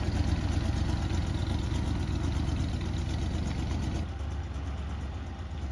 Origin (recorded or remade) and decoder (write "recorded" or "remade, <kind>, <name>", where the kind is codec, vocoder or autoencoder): recorded